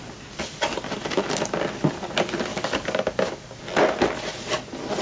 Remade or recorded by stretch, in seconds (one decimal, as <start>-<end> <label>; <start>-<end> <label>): 0.0-2.5 recorded; 2.5-3.6 remade; 3.6-5.0 recorded